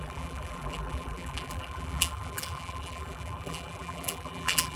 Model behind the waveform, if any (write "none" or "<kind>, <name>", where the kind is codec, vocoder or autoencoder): vocoder, BigVGAN v2